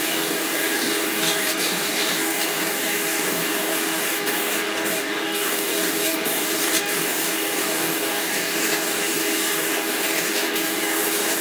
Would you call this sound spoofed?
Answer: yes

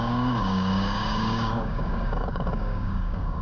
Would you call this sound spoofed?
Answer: yes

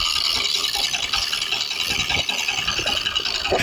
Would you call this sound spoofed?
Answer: no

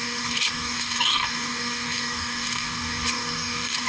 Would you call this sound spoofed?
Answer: yes